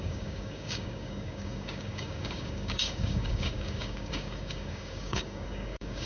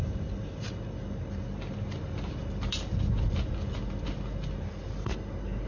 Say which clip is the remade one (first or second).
first